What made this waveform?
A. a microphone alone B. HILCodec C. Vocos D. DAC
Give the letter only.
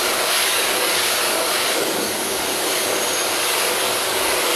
D